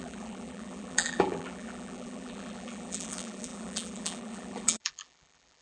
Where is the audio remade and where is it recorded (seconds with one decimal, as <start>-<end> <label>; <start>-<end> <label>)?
0.0-5.6 remade